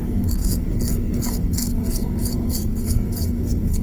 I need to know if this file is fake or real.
fake